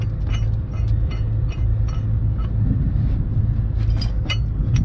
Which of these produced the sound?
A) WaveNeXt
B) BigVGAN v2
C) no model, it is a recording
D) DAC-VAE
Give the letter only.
C